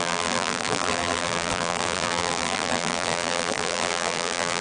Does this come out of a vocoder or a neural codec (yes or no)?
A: yes